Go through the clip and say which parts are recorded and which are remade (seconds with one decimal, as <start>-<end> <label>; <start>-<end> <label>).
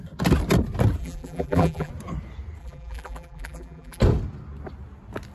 0.0-1.0 recorded; 1.0-1.9 remade; 1.9-2.6 recorded; 2.6-4.0 remade; 4.0-5.3 recorded